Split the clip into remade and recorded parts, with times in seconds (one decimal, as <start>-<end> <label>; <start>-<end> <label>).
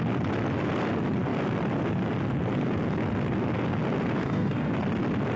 0.0-4.2 recorded; 4.2-4.7 remade; 4.7-5.4 recorded